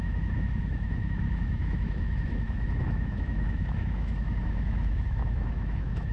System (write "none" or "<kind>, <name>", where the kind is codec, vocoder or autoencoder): autoencoder, DAC-VAE